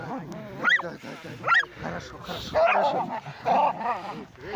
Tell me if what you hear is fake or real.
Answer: real